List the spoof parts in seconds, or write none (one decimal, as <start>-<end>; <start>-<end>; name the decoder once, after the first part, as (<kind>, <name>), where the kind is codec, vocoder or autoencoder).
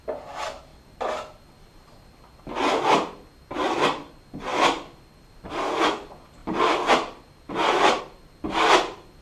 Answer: 6.4-8.0 (vocoder, BigVGAN v2)